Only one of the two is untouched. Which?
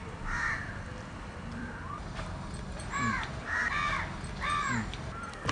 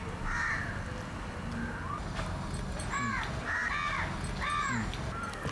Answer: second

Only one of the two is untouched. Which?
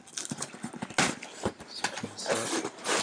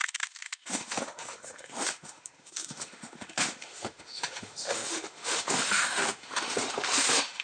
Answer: first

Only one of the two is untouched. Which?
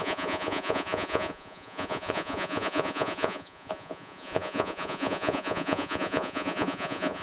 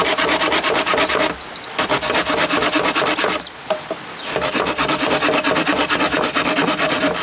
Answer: second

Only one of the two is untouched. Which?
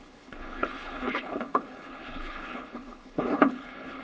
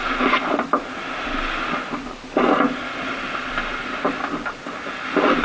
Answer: second